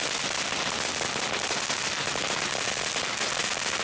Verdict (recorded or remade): recorded